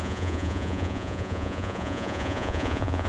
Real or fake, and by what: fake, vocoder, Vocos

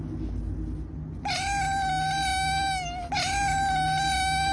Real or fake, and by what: real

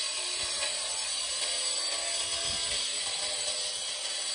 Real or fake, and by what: real